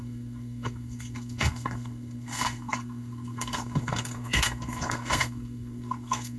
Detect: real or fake fake